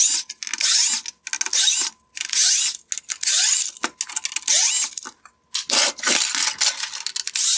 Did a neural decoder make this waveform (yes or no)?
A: no